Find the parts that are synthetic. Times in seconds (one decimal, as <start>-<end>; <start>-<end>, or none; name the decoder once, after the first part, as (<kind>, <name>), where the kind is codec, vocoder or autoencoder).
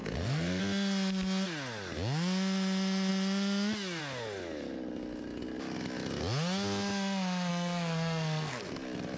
0.0-0.6 (codec, SNAC); 7.5-8.7